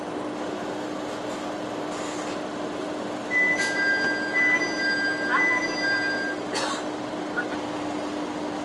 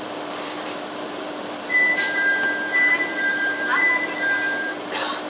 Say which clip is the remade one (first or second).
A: second